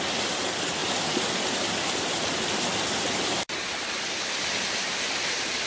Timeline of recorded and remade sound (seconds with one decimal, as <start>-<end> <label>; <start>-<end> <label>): 0.0-5.7 recorded